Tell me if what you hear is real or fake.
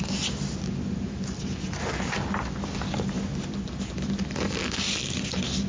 real